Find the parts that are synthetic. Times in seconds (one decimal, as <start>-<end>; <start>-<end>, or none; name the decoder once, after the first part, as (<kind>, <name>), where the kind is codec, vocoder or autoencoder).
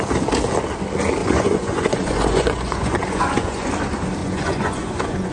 1.2-3.7 (vocoder, Vocos); 4.2-5.3